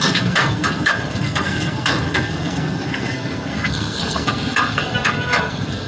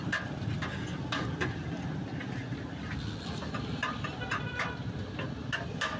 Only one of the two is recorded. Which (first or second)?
second